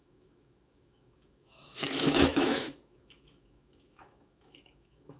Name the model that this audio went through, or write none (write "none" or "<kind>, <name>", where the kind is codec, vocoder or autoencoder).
autoencoder, DAC-VAE